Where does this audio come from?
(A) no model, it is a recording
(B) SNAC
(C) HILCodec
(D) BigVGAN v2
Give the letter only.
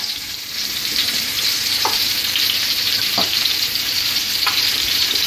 D